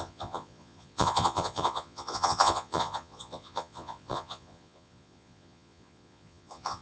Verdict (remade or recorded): remade